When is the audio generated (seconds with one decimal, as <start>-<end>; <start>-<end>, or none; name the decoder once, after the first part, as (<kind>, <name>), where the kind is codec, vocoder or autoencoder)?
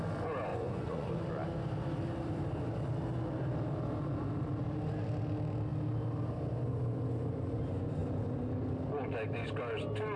0.5-1.1 (vocoder, Vocos)